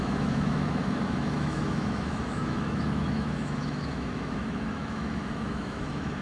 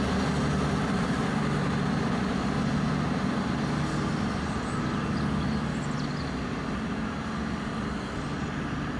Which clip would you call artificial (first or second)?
first